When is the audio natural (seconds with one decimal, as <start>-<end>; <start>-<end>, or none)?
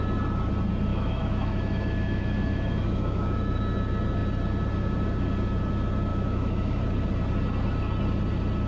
0.0-0.9; 3.6-6.1; 6.8-8.7